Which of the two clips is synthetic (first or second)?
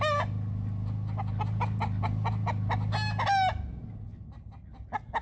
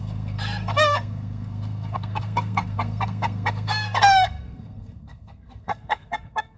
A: second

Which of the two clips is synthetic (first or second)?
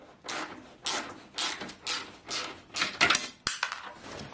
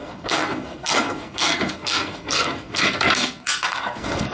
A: second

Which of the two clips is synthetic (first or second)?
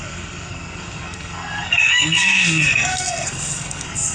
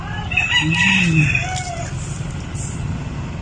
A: first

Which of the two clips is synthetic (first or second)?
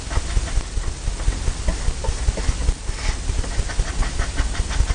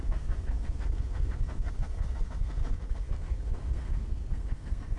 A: second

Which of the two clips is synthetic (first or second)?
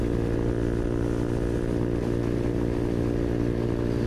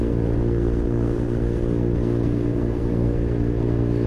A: second